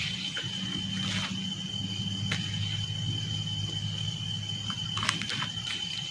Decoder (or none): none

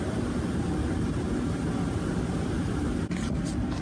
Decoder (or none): none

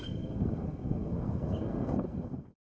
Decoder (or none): codec, SNAC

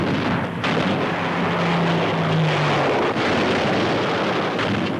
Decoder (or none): none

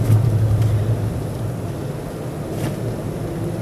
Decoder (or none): none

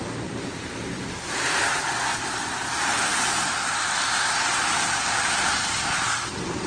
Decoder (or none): none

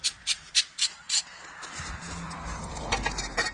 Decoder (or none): none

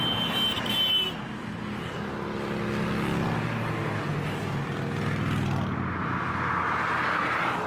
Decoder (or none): none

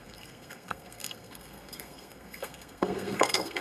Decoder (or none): codec, SNAC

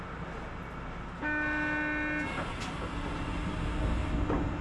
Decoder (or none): none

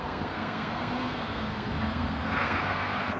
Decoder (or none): codec, SNAC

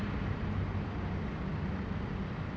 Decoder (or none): none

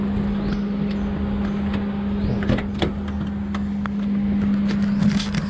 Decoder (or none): none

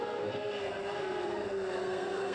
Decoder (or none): codec, SNAC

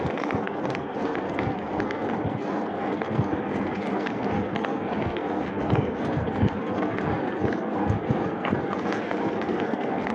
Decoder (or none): codec, SNAC